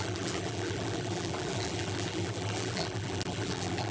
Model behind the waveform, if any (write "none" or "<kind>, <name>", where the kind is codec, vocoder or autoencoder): vocoder, BigVGAN v2